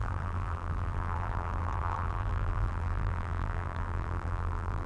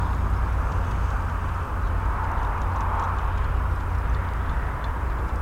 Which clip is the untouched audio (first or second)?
second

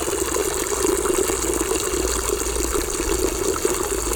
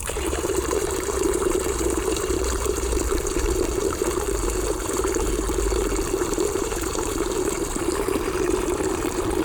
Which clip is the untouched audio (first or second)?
first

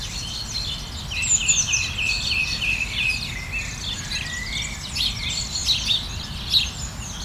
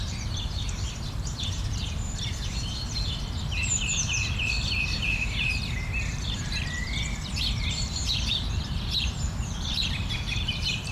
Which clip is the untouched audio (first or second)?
first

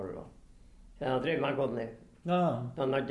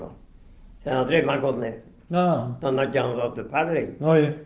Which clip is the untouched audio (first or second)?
first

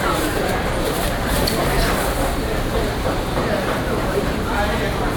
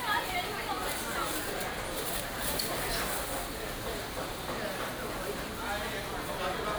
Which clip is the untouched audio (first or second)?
second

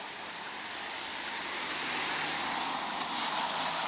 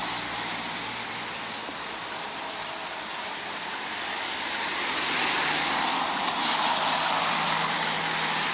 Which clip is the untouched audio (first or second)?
second